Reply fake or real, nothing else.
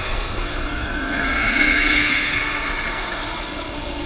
fake